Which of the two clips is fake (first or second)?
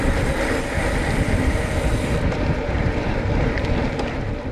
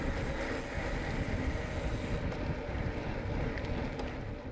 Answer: first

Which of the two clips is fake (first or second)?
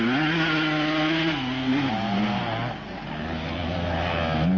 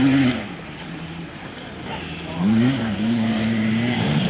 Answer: second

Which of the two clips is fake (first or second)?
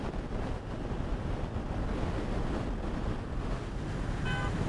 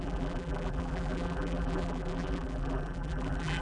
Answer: second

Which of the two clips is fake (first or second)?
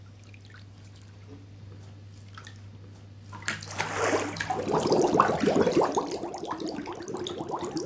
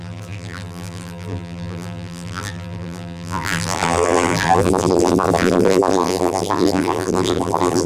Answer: second